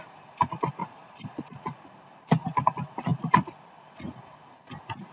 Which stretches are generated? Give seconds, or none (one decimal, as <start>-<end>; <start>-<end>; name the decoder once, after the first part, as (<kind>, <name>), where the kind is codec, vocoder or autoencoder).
0.8-1.4 (vocoder, Vocos)